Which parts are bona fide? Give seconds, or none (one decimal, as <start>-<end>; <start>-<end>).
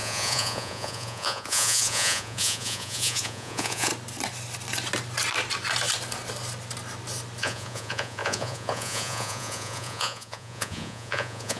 3.9-7.4